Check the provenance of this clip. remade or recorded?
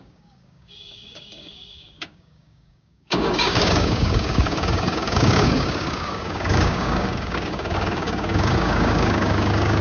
remade